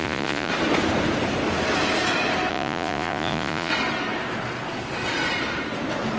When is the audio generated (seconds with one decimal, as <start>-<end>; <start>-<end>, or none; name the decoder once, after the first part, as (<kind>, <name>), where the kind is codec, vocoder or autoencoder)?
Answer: 0.0-0.5 (vocoder, Vocos); 2.5-3.7